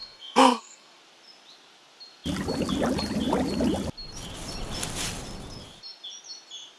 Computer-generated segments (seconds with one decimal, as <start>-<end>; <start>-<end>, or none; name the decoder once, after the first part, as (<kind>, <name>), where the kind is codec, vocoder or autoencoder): 0.0-1.0 (codec, SNAC)